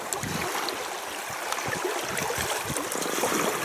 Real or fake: real